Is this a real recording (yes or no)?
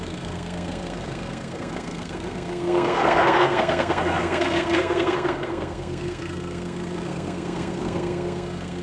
no